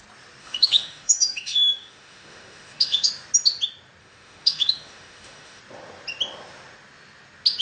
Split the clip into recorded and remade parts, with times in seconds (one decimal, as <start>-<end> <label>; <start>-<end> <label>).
0.0-0.4 recorded; 0.4-3.1 remade; 3.1-4.0 recorded; 4.0-5.6 remade; 5.6-7.6 recorded